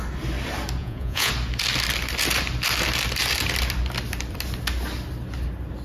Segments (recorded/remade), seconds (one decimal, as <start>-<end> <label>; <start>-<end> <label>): 0.0-0.8 recorded; 0.8-1.3 remade; 1.3-5.8 recorded